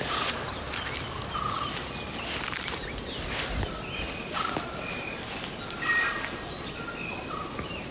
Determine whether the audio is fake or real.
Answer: real